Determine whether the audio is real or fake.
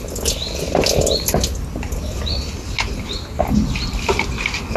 real